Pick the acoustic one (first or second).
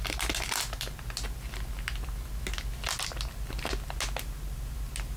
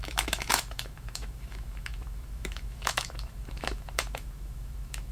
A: first